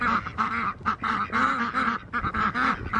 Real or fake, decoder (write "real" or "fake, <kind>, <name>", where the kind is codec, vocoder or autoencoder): real